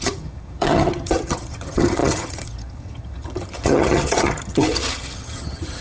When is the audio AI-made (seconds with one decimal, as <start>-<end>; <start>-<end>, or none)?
0.0-5.8

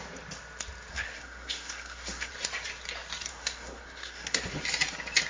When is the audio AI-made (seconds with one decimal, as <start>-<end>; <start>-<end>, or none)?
0.9-2.3; 3.3-4.5

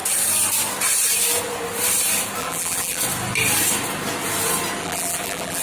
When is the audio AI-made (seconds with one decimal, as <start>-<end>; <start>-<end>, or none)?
2.4-3.0; 4.8-5.6

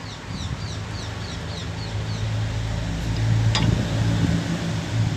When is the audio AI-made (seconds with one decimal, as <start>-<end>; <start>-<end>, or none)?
none

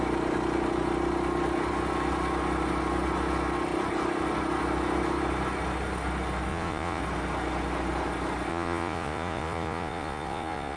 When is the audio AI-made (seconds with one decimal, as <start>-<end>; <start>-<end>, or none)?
6.5-7.0; 8.5-10.8

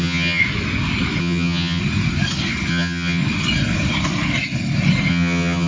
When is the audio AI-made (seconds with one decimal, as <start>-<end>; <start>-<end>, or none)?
0.0-0.4; 1.2-1.8; 2.7-3.2; 5.1-5.7